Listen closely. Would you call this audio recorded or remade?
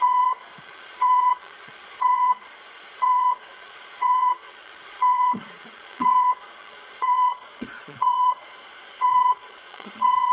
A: remade